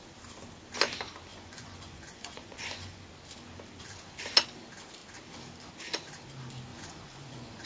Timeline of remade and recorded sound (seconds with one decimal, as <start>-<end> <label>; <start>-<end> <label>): 0.0-1.3 recorded; 1.3-3.1 remade; 3.1-6.7 recorded; 6.7-7.7 remade